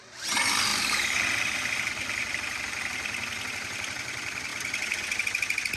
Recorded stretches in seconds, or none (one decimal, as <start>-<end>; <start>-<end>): 0.0-5.8